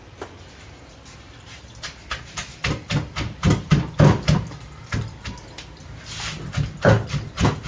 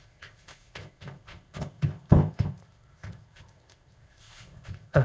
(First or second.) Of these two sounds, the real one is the first